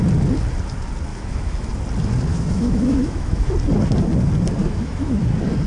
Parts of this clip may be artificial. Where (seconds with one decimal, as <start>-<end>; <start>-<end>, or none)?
1.1-1.7; 2.3-3.5; 4.6-5.2